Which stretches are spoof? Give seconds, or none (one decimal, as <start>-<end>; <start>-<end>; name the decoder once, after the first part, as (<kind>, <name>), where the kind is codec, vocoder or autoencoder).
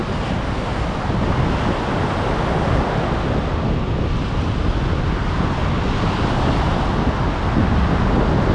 none